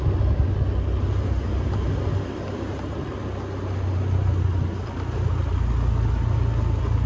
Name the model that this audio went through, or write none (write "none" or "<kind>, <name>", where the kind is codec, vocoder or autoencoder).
none